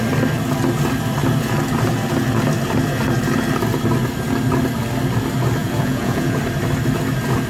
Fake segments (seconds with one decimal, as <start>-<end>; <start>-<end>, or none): 5.6-6.4